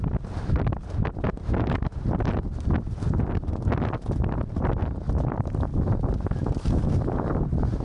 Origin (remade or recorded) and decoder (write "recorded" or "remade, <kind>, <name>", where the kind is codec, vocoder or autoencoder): recorded